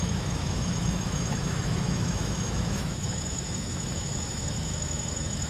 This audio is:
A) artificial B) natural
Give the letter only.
A